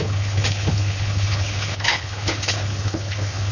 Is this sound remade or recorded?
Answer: remade